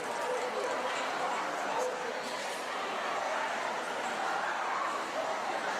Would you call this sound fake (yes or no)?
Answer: no